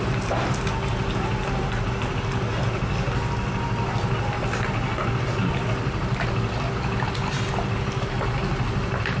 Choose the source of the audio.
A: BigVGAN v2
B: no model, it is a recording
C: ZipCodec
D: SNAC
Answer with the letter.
B